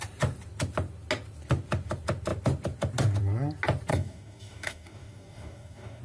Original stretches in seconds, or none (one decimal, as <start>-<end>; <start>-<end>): 0.0-3.9